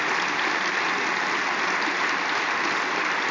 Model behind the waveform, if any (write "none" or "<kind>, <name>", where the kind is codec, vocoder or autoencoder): none